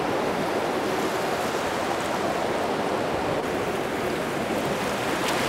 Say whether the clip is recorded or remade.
recorded